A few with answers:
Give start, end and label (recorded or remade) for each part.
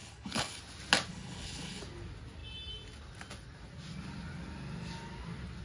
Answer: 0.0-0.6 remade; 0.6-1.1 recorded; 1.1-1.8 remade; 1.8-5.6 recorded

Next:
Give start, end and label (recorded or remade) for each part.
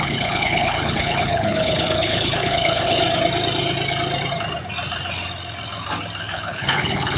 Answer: 0.0-3.0 remade; 3.0-6.2 recorded; 6.2-7.2 remade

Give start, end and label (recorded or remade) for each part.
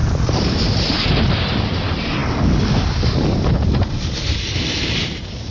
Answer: 0.0-5.5 recorded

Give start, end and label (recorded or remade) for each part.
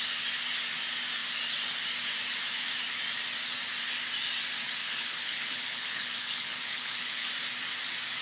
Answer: 0.0-4.8 recorded; 4.8-7.3 remade; 7.3-8.2 recorded